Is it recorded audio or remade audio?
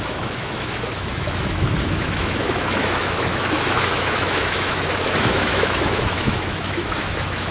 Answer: remade